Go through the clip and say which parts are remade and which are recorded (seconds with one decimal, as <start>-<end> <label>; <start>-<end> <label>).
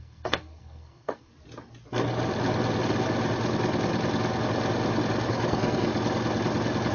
0.0-1.3 remade; 1.3-5.3 recorded; 5.3-5.9 remade; 5.9-6.9 recorded